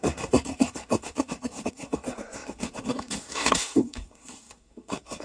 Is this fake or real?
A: fake